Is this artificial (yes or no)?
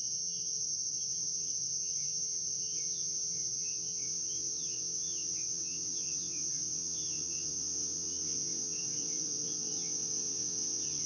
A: yes